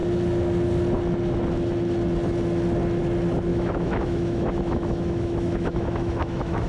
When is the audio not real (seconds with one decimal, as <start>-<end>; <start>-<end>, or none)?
3.5-6.7